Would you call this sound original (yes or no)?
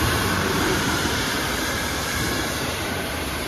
no